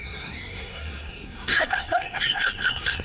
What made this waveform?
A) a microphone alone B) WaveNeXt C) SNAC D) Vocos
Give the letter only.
C